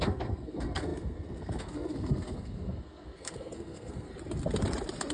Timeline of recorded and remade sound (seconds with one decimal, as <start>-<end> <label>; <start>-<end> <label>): 0.0-4.1 remade; 4.1-5.1 recorded

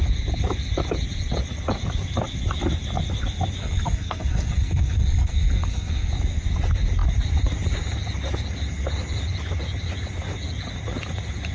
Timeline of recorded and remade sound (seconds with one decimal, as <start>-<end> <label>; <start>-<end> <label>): 0.0-3.6 recorded; 3.6-6.1 remade; 6.1-11.5 recorded

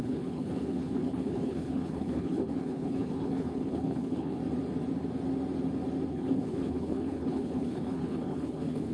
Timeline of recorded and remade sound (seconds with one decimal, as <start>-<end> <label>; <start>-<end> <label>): 0.0-4.4 remade; 4.4-6.1 recorded; 6.1-8.9 remade

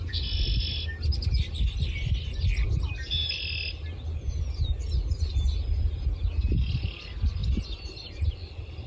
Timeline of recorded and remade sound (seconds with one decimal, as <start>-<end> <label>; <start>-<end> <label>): 0.0-8.9 recorded

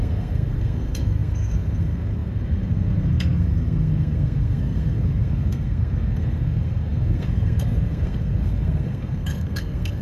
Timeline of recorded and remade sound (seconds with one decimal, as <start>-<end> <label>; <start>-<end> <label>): 0.0-10.0 remade

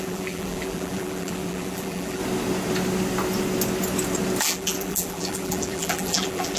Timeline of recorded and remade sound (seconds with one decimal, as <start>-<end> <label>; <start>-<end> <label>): 0.0-2.2 remade; 2.2-4.4 recorded; 4.4-6.6 remade